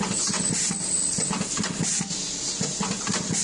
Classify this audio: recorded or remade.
recorded